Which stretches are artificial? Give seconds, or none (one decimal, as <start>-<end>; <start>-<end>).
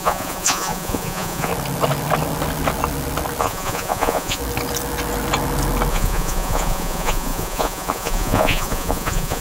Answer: 0.0-1.5; 3.4-4.4; 5.9-9.4